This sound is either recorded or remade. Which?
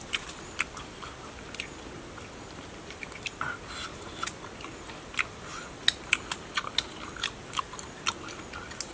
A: recorded